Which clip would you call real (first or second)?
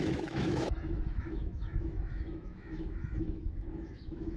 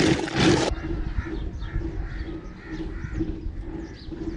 second